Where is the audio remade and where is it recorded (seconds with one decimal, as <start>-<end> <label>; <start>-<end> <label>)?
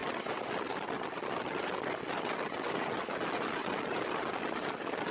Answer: 0.0-5.1 recorded